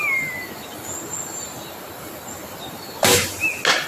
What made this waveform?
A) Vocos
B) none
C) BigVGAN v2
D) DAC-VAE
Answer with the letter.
B